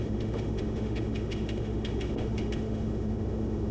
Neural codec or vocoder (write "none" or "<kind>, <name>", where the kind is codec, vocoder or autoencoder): autoencoder, DAC-VAE